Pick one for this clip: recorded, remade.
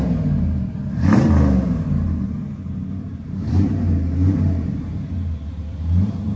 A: recorded